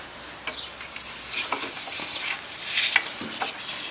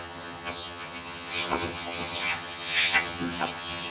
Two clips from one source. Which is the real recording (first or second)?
first